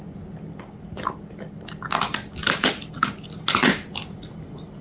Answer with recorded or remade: recorded